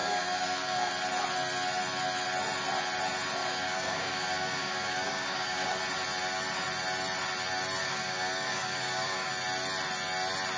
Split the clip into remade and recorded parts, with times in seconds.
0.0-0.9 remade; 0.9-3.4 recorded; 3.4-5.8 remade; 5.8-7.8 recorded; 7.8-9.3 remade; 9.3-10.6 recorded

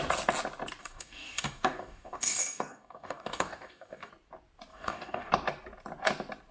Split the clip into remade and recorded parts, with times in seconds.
0.0-0.8 recorded; 0.8-4.1 remade; 4.1-4.7 recorded; 4.7-5.3 remade; 5.3-6.5 recorded

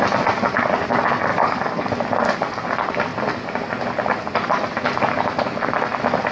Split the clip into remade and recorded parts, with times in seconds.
0.0-1.3 recorded; 1.3-1.9 remade; 1.9-6.3 recorded

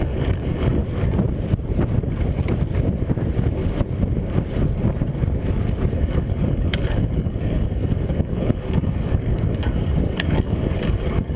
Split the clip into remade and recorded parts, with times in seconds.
0.0-0.8 remade; 0.8-5.9 recorded; 5.9-11.4 remade

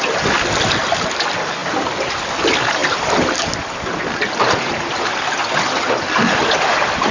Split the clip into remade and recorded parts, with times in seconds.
0.0-7.1 recorded